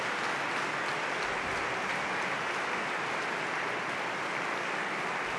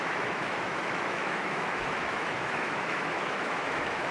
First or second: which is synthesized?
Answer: second